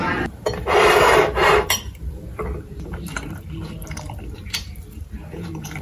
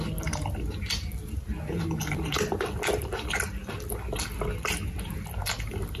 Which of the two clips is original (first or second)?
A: second